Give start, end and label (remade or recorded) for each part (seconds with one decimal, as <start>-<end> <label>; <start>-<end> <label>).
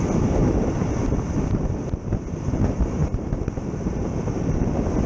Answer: 0.0-0.4 remade; 0.4-2.0 recorded; 2.0-5.1 remade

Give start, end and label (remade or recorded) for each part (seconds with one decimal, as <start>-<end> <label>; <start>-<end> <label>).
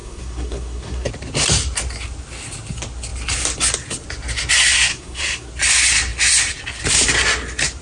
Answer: 0.0-1.1 remade; 1.1-4.9 recorded; 4.9-5.5 remade; 5.5-7.8 recorded